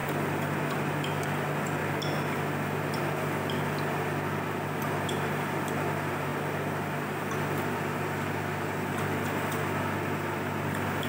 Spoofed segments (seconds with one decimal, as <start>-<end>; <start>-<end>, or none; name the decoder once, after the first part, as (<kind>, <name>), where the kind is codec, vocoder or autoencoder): 1.8-3.0 (vocoder, BigVGAN v2)